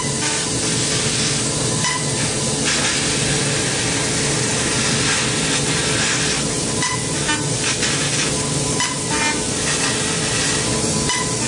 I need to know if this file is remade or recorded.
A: recorded